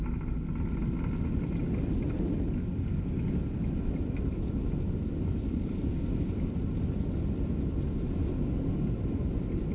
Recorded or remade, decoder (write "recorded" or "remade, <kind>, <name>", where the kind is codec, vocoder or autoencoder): recorded